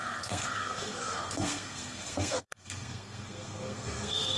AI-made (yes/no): yes